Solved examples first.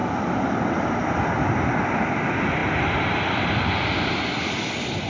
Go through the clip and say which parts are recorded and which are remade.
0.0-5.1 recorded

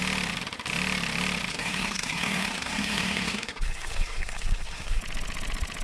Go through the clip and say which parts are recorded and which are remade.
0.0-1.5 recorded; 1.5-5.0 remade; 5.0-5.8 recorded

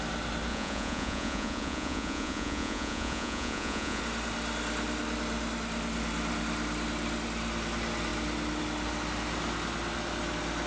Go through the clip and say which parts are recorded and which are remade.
0.0-0.5 recorded; 0.5-4.0 remade; 4.0-10.7 recorded

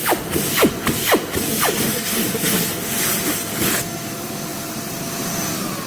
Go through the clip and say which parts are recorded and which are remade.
0.0-4.5 recorded; 4.5-5.5 remade; 5.5-5.9 recorded

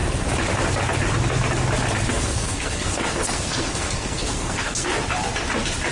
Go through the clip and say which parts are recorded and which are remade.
0.0-2.1 recorded; 2.1-4.9 remade; 4.9-5.9 recorded

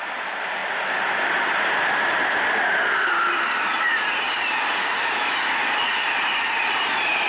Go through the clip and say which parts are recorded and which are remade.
0.0-7.3 remade

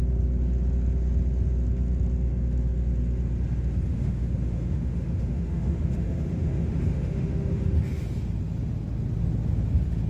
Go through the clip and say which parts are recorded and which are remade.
0.0-3.9 recorded; 3.9-7.6 remade; 7.6-10.1 recorded